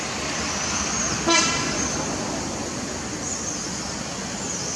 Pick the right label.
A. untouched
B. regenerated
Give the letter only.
A